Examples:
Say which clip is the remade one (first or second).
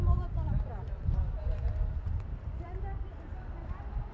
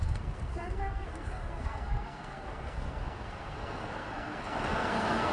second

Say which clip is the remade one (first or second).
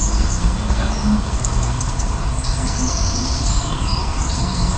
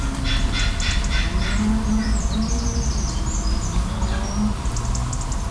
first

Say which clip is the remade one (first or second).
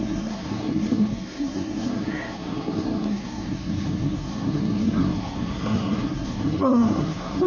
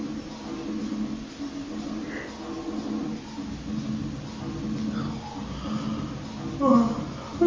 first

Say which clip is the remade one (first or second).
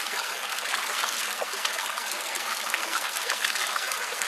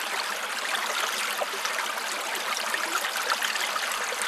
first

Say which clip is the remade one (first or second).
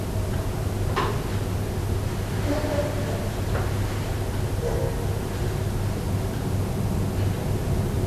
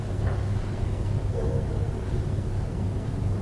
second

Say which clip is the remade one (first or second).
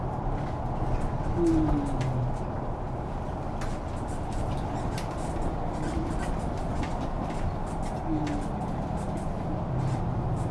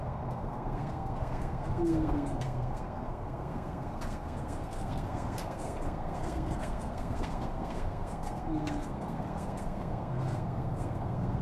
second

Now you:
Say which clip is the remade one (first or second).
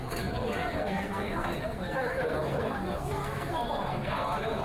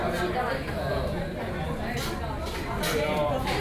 first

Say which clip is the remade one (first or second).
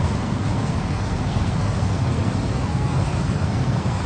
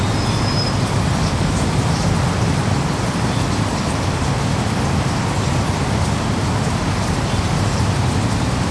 first